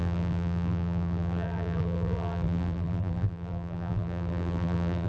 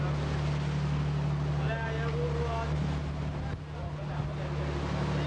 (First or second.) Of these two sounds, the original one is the second